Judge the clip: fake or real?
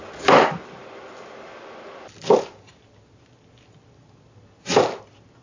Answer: real